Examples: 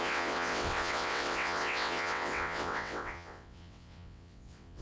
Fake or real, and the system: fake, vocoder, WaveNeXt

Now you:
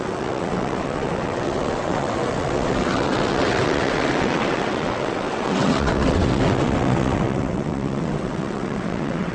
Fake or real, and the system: fake, vocoder, WaveNeXt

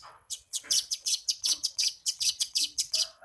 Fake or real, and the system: fake, vocoder, WaveNeXt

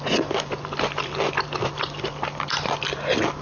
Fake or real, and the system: real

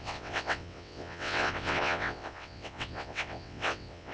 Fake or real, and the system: fake, vocoder, WaveNeXt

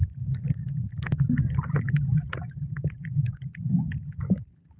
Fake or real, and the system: real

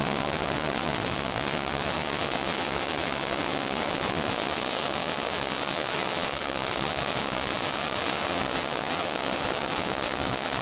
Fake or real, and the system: fake, vocoder, WaveNeXt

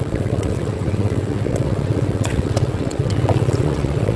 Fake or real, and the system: fake, vocoder, WaveNeXt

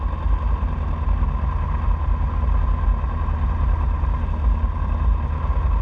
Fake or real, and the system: real